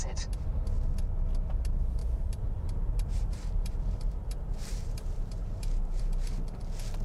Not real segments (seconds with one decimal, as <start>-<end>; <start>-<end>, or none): 2.0-6.0